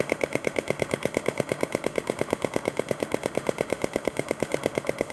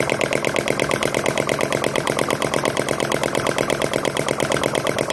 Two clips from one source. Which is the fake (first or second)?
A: first